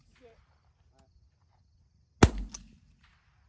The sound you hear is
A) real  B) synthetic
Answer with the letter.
A